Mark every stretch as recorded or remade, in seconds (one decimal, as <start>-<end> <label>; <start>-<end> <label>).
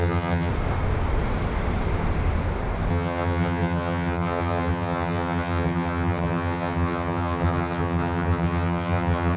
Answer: 0.0-0.5 remade; 0.5-2.9 recorded; 2.9-9.4 remade